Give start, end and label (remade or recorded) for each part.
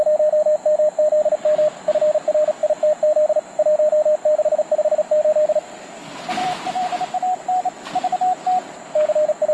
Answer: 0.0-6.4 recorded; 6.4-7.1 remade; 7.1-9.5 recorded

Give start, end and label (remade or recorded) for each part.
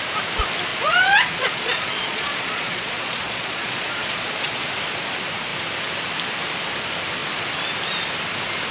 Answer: 0.0-0.7 recorded; 0.7-4.7 remade; 4.7-8.7 recorded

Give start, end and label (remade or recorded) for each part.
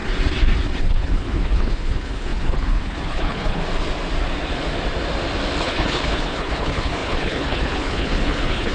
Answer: 0.0-0.8 recorded; 0.8-3.6 remade; 3.6-5.6 recorded; 5.6-8.7 remade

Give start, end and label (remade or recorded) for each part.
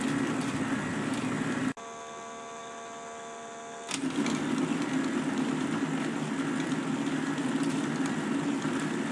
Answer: 0.0-9.1 recorded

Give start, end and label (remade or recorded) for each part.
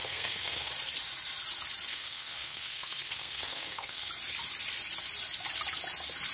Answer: 0.0-0.7 remade; 0.7-1.9 recorded; 1.9-4.1 remade; 4.1-6.3 recorded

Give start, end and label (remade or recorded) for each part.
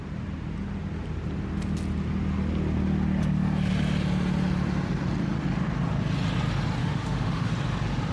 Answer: 0.0-6.8 recorded; 6.8-7.5 remade; 7.5-8.1 recorded